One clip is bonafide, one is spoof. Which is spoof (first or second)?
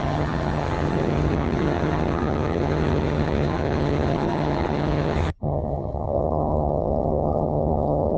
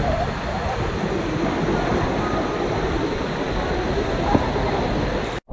first